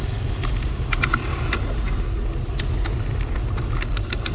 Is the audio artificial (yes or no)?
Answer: no